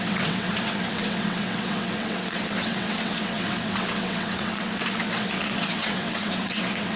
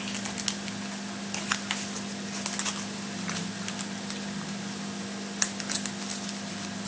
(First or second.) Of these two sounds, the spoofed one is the first